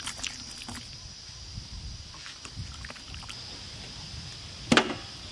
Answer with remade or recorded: recorded